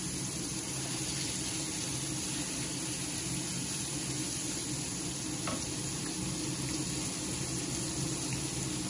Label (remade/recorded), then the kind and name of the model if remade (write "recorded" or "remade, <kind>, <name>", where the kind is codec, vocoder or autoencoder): recorded